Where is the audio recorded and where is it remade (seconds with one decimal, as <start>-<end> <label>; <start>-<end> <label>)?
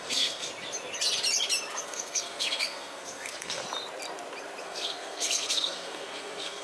0.0-0.5 remade; 0.5-1.8 recorded; 1.8-3.6 remade; 3.6-4.6 recorded; 4.6-6.6 remade